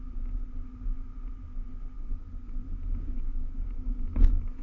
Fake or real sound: real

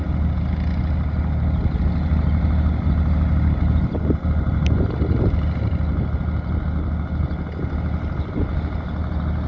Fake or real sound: real